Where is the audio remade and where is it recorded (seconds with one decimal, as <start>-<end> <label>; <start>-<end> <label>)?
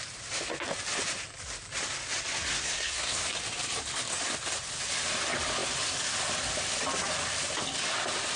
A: 0.0-2.5 recorded; 2.5-3.3 remade; 3.3-8.4 recorded